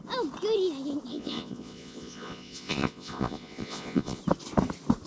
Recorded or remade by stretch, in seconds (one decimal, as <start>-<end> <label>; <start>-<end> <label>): 0.0-1.1 recorded; 1.1-4.2 remade; 4.2-5.1 recorded